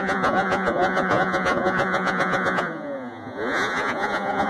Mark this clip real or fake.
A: fake